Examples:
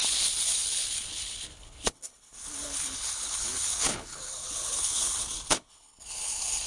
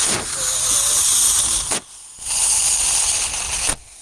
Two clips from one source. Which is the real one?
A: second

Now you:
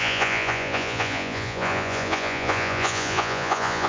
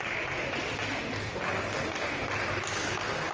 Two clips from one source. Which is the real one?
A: second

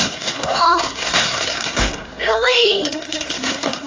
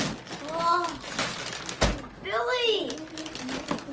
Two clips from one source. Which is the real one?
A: second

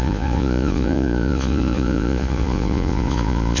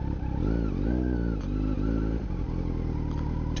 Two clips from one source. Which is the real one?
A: second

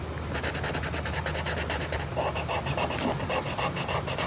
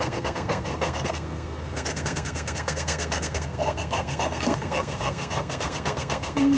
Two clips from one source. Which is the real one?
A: first